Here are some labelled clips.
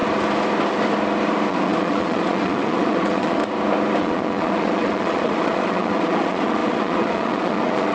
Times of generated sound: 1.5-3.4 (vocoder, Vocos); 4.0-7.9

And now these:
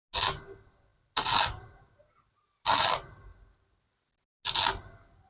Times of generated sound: none

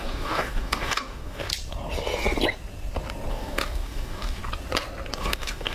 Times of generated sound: 0.0-1.5 (codec, DAC); 3.3-4.4; 5.2-5.7

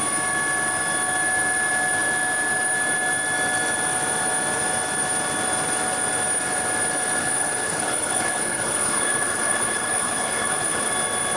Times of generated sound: 7.2-10.9 (codec, HILCodec)

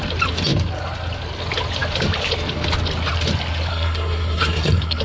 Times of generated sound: 3.7-5.0 (codec, SNAC)

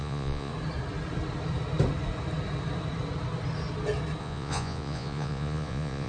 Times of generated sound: 0.0-0.5 (vocoder, Vocos); 4.2-6.1

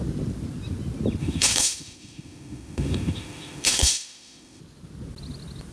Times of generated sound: 1.2-4.6 (autoencoder, DAC-VAE)

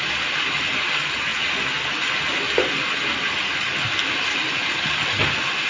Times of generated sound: none